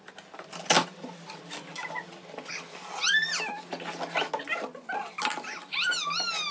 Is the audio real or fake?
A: real